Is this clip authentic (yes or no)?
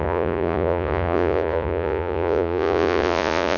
no